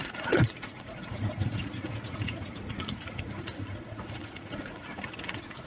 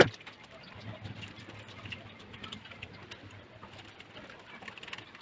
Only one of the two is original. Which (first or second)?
second